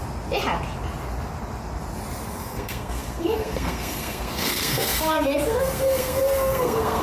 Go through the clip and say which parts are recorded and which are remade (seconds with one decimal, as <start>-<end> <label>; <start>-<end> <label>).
0.0-2.3 recorded; 2.3-7.0 remade